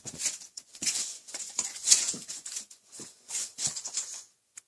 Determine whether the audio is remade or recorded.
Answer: remade